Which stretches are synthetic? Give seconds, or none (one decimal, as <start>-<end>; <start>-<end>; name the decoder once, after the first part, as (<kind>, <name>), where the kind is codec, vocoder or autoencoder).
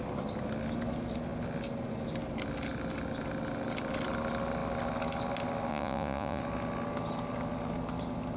5.7-6.4 (vocoder, Vocos)